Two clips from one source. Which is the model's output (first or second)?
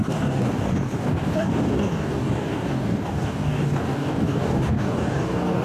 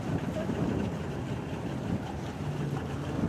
first